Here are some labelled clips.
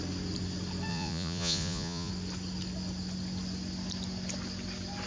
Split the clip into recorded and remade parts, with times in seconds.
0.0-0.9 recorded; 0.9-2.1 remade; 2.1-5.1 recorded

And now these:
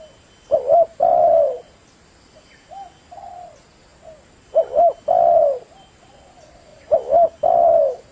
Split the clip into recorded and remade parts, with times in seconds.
0.0-8.1 recorded

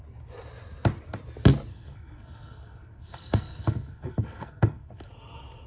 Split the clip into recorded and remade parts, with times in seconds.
0.0-1.7 recorded; 1.7-5.1 remade; 5.1-5.7 recorded

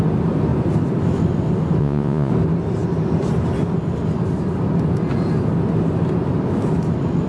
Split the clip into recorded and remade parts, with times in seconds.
0.0-1.8 recorded; 1.8-2.3 remade; 2.3-7.3 recorded

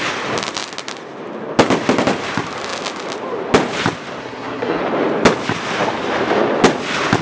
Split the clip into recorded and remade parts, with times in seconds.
0.0-4.2 recorded; 4.2-4.8 remade; 4.8-7.2 recorded

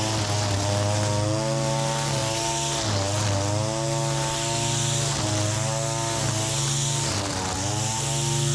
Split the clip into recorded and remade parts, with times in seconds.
0.0-8.5 recorded

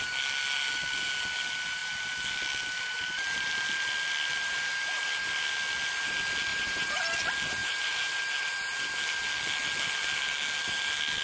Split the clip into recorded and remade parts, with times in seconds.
0.0-6.5 recorded; 6.5-7.0 remade; 7.0-7.6 recorded; 7.6-8.2 remade; 8.2-11.2 recorded

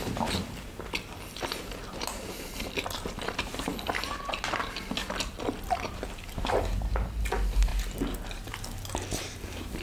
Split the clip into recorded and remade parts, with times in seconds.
0.0-9.8 recorded